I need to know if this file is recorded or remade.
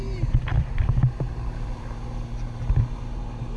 recorded